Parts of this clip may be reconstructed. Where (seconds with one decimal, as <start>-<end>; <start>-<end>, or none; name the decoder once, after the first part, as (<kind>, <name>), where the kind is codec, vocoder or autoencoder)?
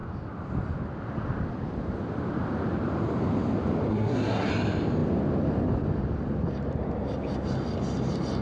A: 3.9-4.5 (codec, SNAC)